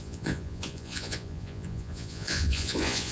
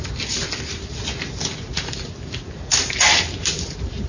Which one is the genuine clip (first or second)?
second